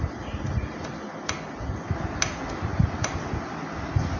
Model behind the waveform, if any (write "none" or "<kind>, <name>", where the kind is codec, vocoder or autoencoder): none